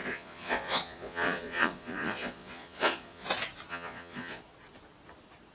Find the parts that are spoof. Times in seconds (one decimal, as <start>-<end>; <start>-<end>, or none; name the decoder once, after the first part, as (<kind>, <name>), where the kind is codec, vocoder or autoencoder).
0.0-3.3 (vocoder, Vocos); 3.7-4.4